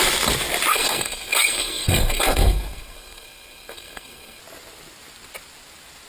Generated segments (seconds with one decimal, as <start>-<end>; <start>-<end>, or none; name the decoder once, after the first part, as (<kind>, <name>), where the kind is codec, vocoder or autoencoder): 0.7-4.4 (codec, SNAC)